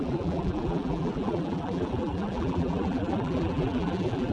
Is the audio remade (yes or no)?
yes